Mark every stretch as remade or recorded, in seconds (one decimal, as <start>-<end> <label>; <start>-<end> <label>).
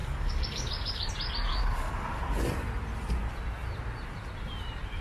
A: 0.0-1.1 remade; 1.1-1.5 recorded; 1.5-2.2 remade; 2.2-5.0 recorded